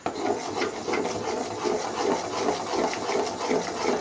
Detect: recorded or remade recorded